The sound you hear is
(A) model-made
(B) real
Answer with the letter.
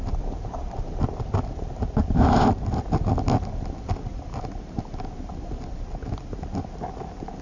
B